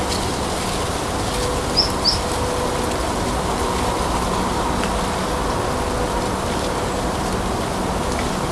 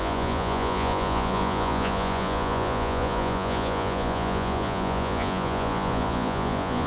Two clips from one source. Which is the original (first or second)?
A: first